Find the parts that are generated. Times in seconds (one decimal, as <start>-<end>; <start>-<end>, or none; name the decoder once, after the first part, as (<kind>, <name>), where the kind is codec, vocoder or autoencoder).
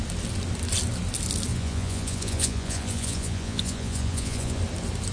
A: 1.5-4.6 (vocoder, Vocos)